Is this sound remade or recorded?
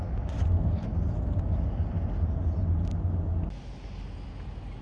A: recorded